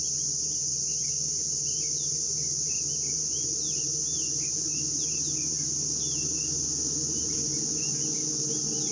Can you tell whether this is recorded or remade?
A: recorded